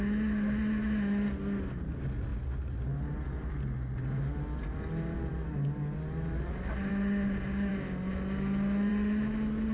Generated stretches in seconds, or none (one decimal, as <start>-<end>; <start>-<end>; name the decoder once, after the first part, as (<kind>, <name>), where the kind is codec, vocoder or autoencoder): none